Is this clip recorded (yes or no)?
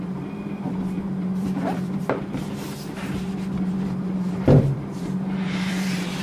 no